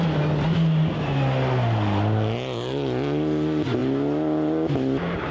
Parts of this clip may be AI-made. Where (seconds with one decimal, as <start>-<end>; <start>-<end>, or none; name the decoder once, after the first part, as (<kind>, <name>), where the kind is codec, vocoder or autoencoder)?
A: none

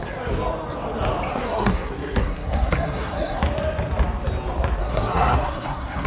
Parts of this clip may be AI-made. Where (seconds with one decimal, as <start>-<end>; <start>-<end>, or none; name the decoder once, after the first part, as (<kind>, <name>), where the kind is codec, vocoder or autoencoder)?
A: 1.3-3.4 (codec, SNAC); 4.8-6.1

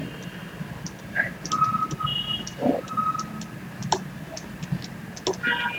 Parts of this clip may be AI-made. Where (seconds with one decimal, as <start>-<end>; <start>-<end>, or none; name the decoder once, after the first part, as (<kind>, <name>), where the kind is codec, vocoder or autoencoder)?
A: 0.0-1.5 (vocoder, BigVGAN v2); 2.1-2.8; 3.8-4.6

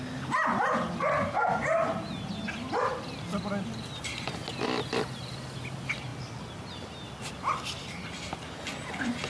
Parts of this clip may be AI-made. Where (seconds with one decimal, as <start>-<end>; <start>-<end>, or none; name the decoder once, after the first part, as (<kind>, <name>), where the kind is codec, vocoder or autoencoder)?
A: none